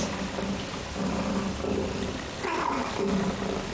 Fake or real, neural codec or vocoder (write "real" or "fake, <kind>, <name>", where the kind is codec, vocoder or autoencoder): real